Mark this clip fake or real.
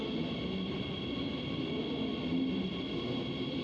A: real